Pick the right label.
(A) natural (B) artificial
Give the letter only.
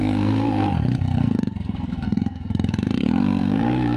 B